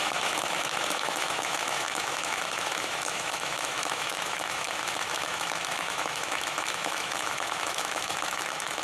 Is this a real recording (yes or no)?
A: no